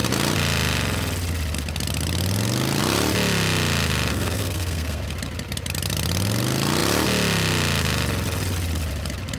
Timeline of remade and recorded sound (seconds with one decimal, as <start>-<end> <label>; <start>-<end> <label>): 0.0-4.1 recorded; 4.1-5.0 remade; 5.0-9.4 recorded